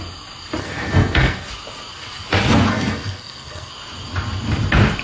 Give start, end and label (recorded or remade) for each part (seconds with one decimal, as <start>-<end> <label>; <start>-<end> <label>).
0.0-0.6 recorded; 0.6-1.5 remade; 1.5-2.7 recorded; 2.7-3.7 remade; 3.7-5.0 recorded